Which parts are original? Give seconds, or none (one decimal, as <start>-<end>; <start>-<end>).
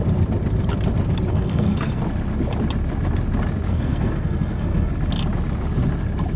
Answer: 0.0-1.3; 2.0-3.7; 4.9-6.4